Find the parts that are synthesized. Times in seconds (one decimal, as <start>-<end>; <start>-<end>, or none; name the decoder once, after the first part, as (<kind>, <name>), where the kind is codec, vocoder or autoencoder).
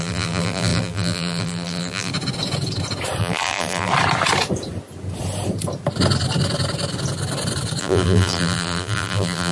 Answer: 0.0-2.1 (vocoder, BigVGAN v2); 3.2-3.9; 7.8-9.5